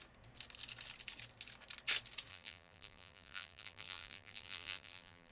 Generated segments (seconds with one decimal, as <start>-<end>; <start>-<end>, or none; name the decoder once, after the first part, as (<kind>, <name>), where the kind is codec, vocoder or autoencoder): 2.3-5.3 (vocoder, BigVGAN v2)